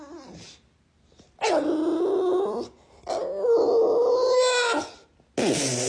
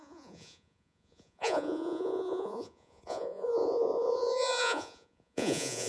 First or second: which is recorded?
first